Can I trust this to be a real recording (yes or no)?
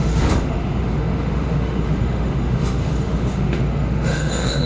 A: no